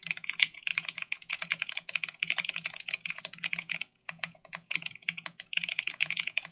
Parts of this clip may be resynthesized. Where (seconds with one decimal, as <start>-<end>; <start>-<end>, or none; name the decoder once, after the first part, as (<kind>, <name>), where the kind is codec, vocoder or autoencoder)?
0.0-6.5 (vocoder, Vocos)